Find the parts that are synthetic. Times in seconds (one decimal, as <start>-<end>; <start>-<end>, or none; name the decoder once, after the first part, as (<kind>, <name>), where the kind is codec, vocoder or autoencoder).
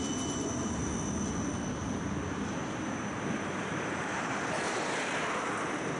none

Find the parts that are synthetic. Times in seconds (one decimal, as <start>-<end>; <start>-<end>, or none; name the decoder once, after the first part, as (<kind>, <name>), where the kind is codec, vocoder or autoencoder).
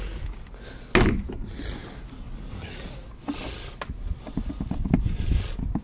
none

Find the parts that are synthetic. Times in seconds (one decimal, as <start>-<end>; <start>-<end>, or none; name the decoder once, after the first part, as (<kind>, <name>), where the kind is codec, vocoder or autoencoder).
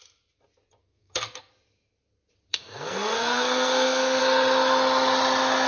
0.8-1.5 (codec, SNAC); 2.5-4.2